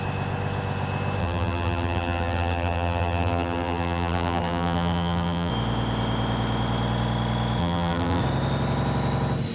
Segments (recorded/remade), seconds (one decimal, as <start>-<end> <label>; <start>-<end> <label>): 0.0-1.2 recorded; 1.2-5.5 remade; 5.5-7.6 recorded; 7.6-8.2 remade; 8.2-9.5 recorded